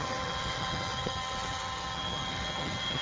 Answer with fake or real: fake